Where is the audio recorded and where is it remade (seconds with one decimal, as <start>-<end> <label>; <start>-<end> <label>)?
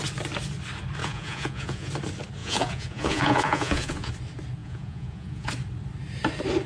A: 0.0-1.0 recorded; 1.0-1.9 remade; 1.9-2.4 recorded; 2.4-4.1 remade; 4.1-4.6 recorded; 4.6-5.5 remade; 5.5-6.7 recorded